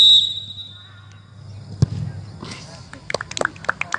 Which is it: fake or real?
real